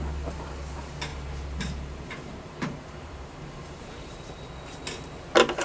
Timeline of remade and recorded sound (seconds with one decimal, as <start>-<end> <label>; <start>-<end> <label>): 0.0-1.1 recorded; 1.1-4.5 remade; 4.5-5.6 recorded